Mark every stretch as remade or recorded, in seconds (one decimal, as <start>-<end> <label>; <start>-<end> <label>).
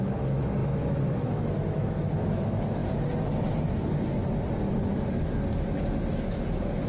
0.0-2.8 remade; 2.8-6.1 recorded; 6.1-6.9 remade